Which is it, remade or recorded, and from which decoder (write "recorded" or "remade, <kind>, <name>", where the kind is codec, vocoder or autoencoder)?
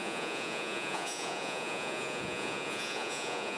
remade, vocoder, Vocos